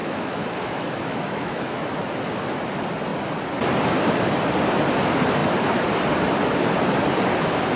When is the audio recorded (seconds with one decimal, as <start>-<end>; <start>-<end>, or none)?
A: 1.9-7.8